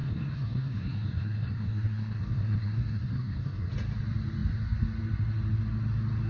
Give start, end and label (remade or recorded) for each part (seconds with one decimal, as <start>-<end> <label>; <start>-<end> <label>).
0.0-3.7 remade; 3.7-6.3 recorded